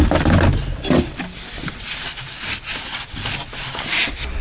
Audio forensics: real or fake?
real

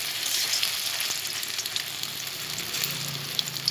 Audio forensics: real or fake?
fake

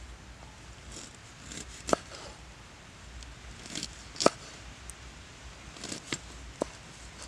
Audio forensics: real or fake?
real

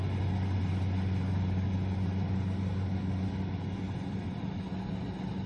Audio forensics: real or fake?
real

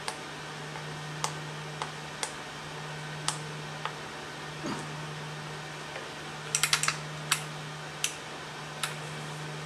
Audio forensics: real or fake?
real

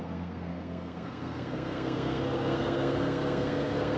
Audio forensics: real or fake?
fake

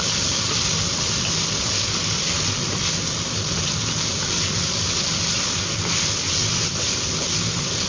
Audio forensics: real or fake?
real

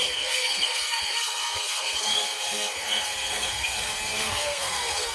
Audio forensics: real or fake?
fake